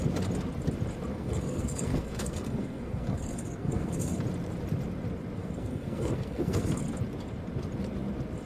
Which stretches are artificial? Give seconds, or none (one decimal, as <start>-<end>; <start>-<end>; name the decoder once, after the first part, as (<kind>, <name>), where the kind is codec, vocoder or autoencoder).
1.1-4.2 (codec, SNAC); 5.4-6.8